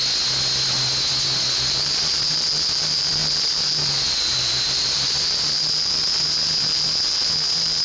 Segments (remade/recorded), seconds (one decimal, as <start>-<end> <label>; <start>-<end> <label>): 0.0-1.5 recorded; 1.5-7.8 remade